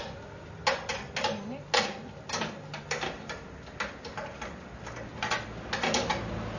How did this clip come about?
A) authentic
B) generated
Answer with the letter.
A